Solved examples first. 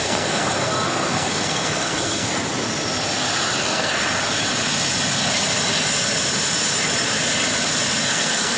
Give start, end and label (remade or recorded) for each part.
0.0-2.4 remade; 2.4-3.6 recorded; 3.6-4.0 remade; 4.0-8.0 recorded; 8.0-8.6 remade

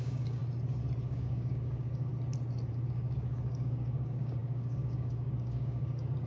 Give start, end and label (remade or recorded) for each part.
0.0-0.4 remade; 0.4-1.1 recorded; 1.1-2.1 remade; 2.1-2.7 recorded; 2.7-6.3 remade

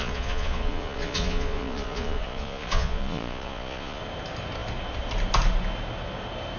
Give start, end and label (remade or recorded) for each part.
0.0-4.0 remade; 4.0-6.6 recorded

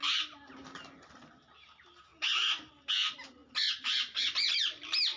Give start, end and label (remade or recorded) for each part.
0.0-5.2 recorded

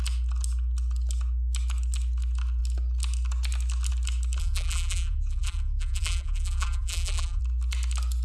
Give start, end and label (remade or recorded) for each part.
0.0-4.4 recorded; 4.4-7.4 remade; 7.4-8.2 recorded